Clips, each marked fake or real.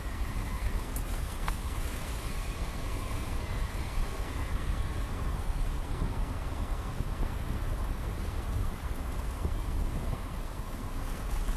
fake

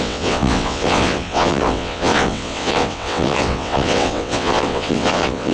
fake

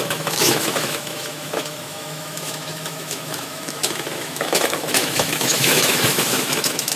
fake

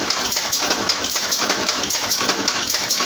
fake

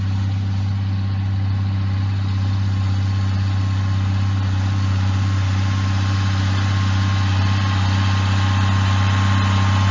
real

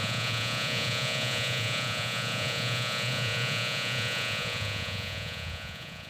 fake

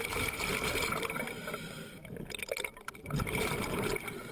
real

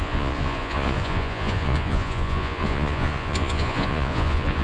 fake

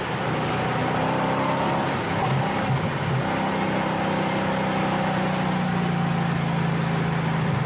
real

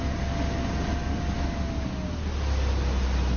real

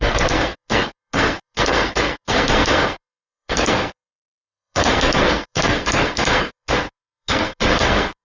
fake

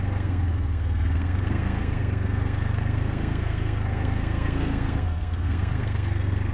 fake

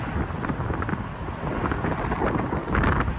real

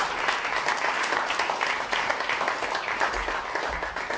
real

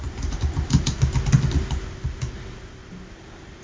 real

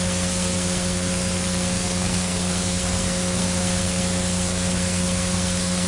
fake